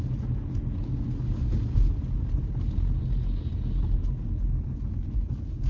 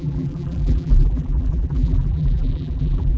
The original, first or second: first